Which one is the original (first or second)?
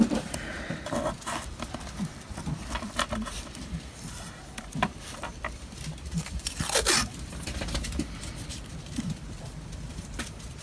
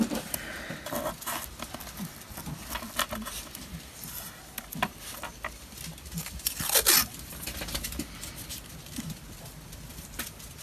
second